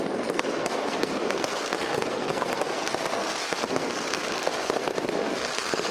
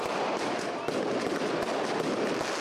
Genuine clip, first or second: second